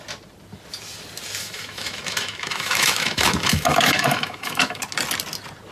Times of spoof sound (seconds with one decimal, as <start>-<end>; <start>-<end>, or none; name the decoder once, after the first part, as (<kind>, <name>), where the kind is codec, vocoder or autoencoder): 1.4-4.8 (autoencoder, DAC-VAE)